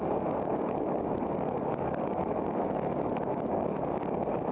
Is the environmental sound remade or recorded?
remade